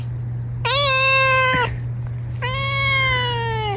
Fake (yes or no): no